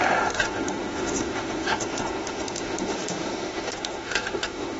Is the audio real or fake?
fake